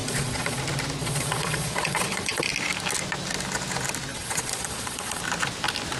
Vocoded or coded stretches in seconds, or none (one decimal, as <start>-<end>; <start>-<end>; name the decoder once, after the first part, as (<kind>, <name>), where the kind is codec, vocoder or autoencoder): 0.0-0.6 (vocoder, Vocos); 1.0-2.5; 4.1-5.2